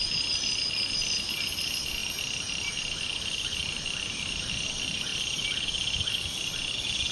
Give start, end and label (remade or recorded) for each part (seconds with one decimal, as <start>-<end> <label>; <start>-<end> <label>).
0.0-7.1 recorded